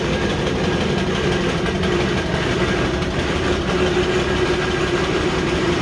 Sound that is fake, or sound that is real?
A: real